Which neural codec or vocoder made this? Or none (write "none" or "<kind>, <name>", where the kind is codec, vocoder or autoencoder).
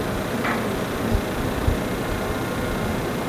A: none